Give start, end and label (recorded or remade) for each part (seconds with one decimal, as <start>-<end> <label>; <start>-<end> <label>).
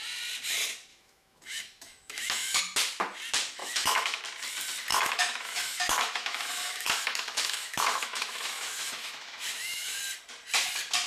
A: 0.0-0.9 recorded; 0.9-2.6 remade; 2.6-3.6 recorded; 3.6-4.2 remade; 4.2-4.9 recorded; 4.9-10.0 remade; 10.0-11.1 recorded